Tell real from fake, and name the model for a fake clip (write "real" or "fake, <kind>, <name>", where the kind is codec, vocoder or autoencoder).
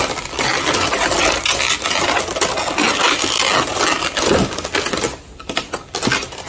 real